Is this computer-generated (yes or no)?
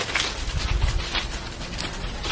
no